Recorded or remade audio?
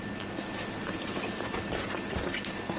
remade